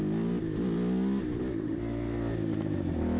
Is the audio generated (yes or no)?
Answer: no